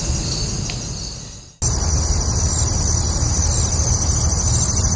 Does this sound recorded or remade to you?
recorded